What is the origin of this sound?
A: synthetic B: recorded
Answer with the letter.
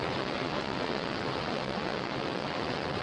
A